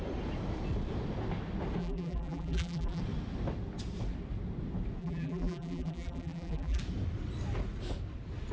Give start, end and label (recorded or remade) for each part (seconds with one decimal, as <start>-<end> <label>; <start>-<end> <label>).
0.0-1.8 recorded; 1.8-3.0 remade; 3.0-5.0 recorded; 5.0-6.8 remade; 6.8-8.5 recorded